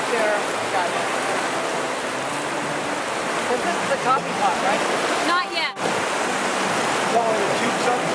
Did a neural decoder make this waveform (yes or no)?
no